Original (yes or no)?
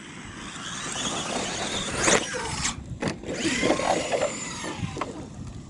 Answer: yes